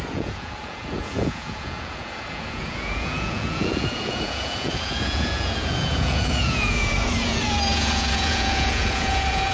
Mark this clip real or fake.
fake